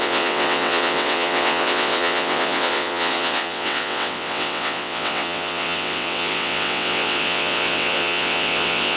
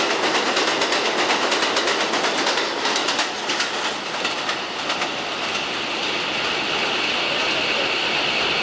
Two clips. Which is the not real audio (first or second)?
first